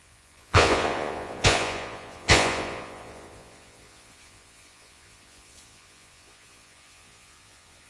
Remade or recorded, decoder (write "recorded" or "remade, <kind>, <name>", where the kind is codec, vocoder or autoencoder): remade, vocoder, Vocos